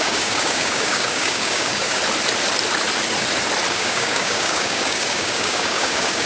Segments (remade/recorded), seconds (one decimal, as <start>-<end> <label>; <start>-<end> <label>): 0.0-2.0 remade; 2.0-3.7 recorded; 3.7-6.3 remade